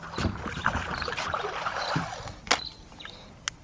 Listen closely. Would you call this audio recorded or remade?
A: recorded